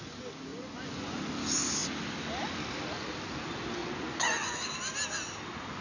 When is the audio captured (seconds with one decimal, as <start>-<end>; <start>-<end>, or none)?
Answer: 0.0-0.5; 1.3-3.8; 4.6-5.8